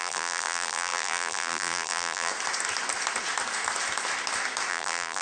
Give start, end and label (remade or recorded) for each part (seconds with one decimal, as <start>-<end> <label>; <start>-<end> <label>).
0.0-2.3 remade; 2.3-4.7 recorded; 4.7-5.2 remade